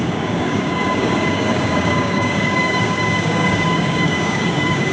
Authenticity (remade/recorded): remade